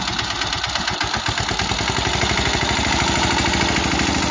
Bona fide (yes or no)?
yes